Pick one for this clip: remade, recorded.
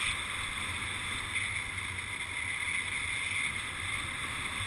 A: recorded